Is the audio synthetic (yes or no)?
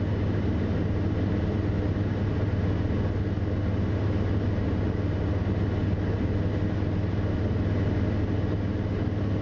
no